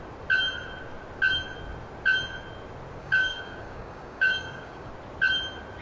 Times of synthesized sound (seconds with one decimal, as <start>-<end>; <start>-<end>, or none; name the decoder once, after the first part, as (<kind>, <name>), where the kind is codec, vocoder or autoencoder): 3.0-4.9 (codec, DAC)